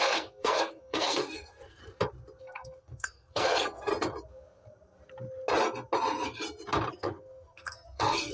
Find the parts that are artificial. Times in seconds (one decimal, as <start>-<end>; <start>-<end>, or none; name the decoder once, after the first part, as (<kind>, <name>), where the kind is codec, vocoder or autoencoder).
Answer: 0.0-1.8 (codec, SNAC); 2.4-3.9; 6.9-8.3